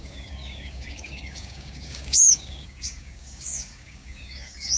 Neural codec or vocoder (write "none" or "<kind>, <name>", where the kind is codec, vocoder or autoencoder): codec, DAC